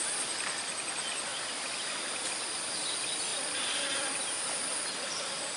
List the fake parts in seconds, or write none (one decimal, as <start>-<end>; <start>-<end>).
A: 1.3-2.0